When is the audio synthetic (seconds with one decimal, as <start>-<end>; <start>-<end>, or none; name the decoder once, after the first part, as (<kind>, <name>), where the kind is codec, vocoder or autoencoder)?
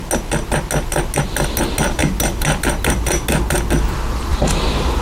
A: 4.3-5.0 (vocoder, BigVGAN v2)